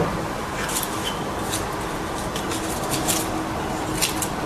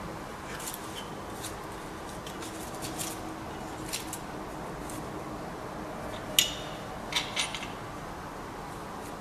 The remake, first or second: first